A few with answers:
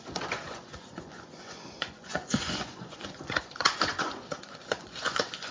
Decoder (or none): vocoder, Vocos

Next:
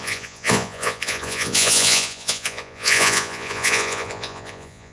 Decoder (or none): vocoder, Vocos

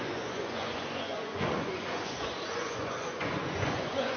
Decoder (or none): vocoder, Vocos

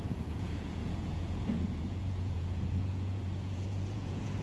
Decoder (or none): vocoder, Vocos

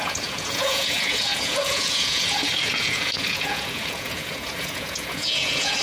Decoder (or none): vocoder, Vocos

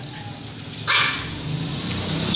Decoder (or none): none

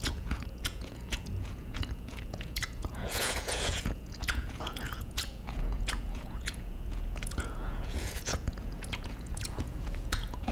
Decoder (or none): vocoder, Vocos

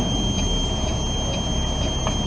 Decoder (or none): none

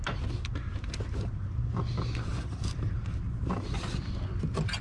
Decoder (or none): none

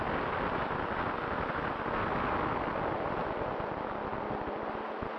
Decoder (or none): none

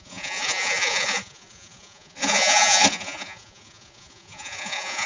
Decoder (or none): vocoder, Vocos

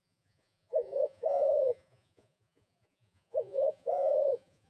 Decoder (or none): vocoder, Vocos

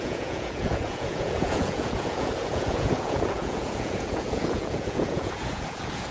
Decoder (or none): vocoder, Vocos